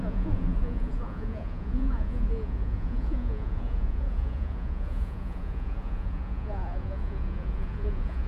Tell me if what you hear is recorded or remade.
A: remade